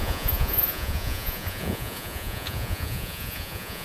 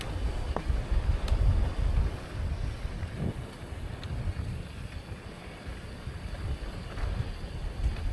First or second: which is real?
second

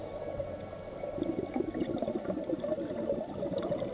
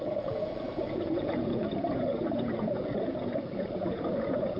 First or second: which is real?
first